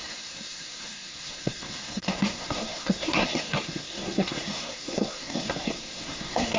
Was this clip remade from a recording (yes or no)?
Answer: yes